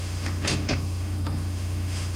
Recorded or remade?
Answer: remade